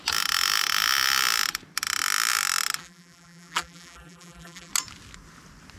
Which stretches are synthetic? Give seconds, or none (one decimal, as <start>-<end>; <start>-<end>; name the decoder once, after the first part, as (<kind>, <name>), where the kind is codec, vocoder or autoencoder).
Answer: 2.8-4.7 (vocoder, BigVGAN v2)